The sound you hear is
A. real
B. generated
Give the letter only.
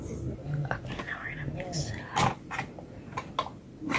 A